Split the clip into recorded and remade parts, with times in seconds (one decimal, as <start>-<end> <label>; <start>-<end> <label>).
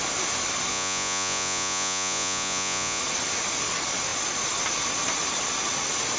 0.0-0.7 recorded; 0.7-3.0 remade; 3.0-6.2 recorded